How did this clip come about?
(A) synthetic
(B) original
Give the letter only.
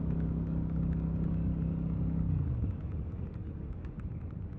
A